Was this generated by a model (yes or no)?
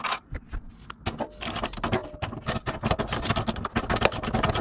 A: no